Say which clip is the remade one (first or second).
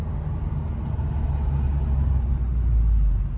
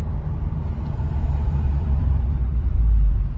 second